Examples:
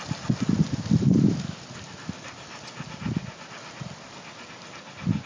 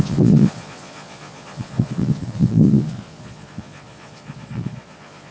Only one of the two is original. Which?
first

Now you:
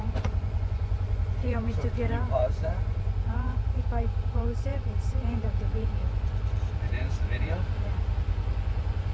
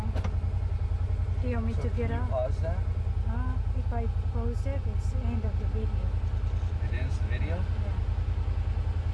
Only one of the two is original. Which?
second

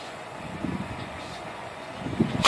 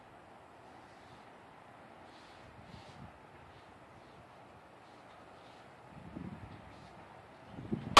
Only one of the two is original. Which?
second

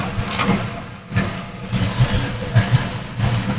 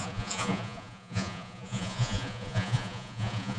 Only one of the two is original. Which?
first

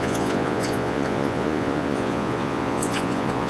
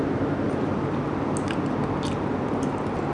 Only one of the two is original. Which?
second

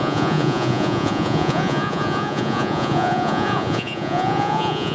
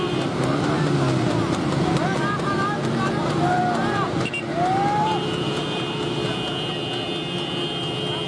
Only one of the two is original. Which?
second